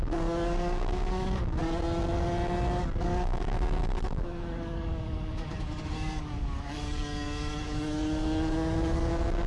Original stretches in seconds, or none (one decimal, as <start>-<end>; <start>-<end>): 1.6-3.0